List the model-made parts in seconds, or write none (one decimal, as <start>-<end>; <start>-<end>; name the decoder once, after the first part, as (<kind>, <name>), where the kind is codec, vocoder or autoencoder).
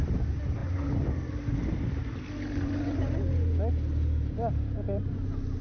none